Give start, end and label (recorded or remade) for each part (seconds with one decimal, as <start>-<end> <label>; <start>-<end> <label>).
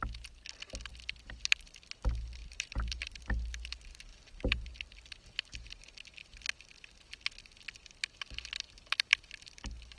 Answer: 0.0-2.4 recorded; 2.4-3.2 remade; 3.2-4.1 recorded; 4.1-5.4 remade; 5.4-10.0 recorded